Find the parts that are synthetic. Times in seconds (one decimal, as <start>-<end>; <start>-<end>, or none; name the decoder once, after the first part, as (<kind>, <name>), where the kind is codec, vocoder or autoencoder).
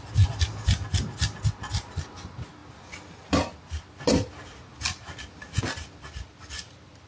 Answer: none